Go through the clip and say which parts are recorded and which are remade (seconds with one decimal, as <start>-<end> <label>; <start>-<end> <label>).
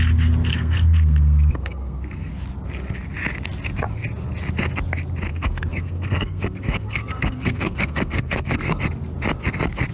0.0-0.5 recorded; 0.5-2.3 remade; 2.3-5.3 recorded; 5.3-8.8 remade; 8.8-9.9 recorded